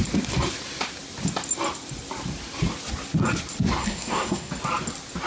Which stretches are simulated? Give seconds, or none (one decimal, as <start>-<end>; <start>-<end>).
3.8-4.5